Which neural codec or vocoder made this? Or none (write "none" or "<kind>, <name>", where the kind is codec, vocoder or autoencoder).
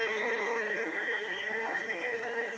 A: codec, SNAC